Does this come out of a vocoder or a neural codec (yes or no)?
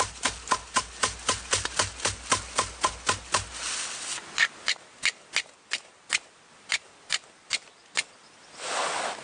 no